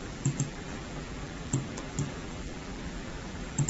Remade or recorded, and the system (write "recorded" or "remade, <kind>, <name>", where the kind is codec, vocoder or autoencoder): remade, vocoder, BigVGAN v2